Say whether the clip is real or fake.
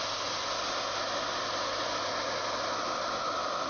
real